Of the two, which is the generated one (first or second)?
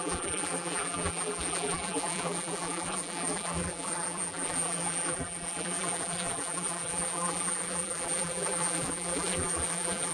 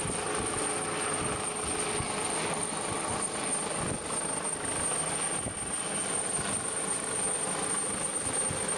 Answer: first